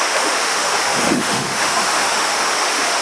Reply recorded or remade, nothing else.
remade